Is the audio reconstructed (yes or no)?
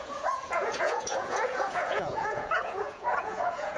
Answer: yes